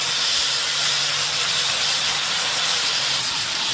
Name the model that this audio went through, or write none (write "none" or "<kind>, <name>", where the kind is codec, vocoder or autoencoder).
vocoder, BigVGAN v2